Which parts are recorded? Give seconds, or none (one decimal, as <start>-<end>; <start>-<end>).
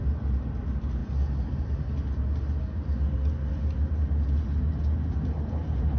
0.0-6.0